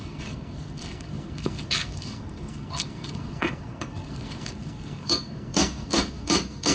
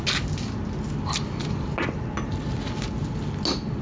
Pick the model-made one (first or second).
first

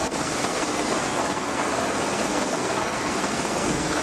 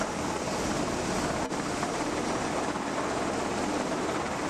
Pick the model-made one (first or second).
first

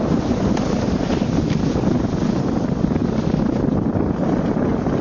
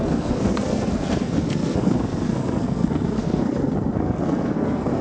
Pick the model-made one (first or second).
second